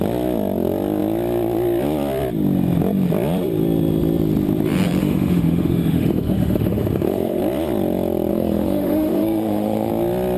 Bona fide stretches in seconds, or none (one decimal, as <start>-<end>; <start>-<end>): 0.0-5.0; 7.4-8.3; 9.9-10.4